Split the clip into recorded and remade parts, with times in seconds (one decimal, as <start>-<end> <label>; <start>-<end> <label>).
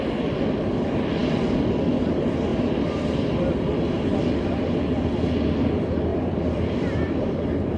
0.0-2.5 recorded; 2.5-3.4 remade; 3.4-6.1 recorded; 6.1-7.8 remade